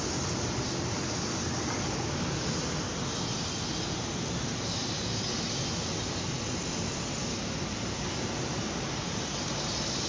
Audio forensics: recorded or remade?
recorded